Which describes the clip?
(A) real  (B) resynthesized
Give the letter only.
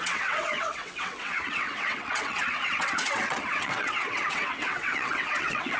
B